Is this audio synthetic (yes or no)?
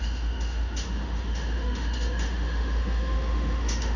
yes